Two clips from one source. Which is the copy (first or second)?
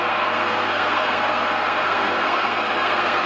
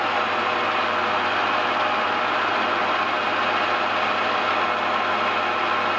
first